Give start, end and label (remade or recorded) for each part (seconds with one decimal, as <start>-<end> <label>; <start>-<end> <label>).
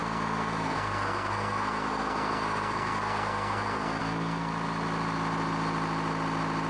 0.0-4.5 remade; 4.5-6.7 recorded